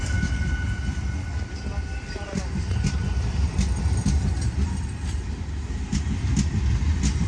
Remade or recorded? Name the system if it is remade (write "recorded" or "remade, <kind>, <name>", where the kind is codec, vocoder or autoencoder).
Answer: recorded